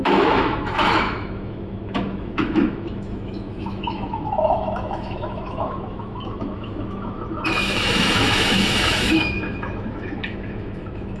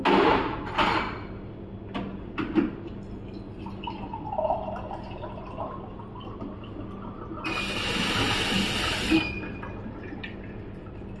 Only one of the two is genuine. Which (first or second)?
second